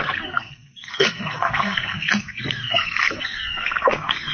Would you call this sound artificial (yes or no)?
yes